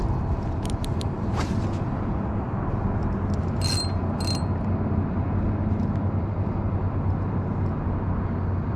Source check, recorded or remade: recorded